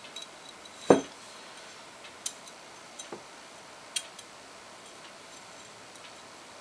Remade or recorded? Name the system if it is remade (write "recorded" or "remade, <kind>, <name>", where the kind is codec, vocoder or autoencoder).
recorded